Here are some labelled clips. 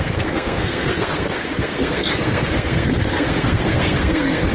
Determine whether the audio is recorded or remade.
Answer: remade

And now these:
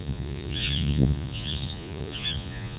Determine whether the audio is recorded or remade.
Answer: remade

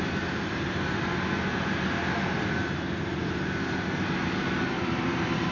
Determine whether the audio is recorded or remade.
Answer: remade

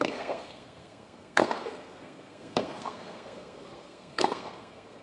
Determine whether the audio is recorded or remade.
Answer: remade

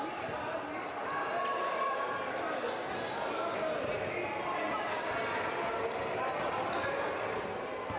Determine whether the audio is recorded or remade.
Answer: recorded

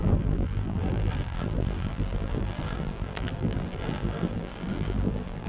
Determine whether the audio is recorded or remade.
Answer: remade